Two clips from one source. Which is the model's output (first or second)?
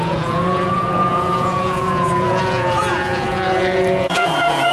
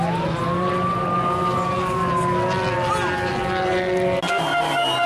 first